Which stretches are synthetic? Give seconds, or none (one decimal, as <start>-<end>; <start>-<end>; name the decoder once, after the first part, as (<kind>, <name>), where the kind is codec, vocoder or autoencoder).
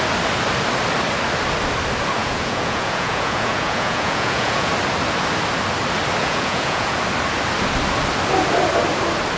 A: 2.2-4.7 (vocoder, Vocos); 6.2-7.0